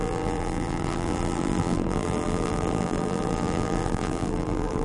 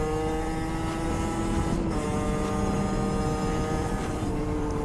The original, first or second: second